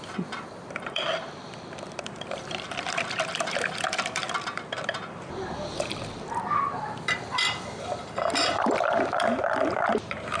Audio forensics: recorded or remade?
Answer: remade